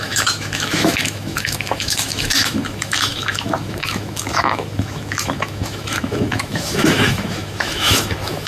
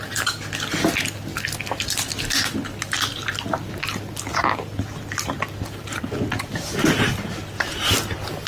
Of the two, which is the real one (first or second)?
second